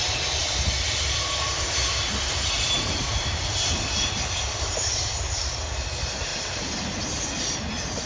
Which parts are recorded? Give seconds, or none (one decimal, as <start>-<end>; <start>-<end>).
0.0-0.4; 5.2-6.3; 6.8-8.1